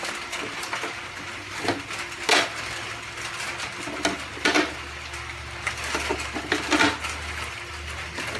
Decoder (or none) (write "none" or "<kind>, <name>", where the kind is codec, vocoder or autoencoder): none